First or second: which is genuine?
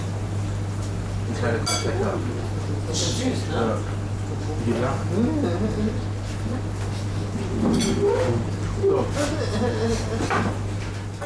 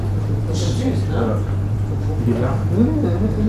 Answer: first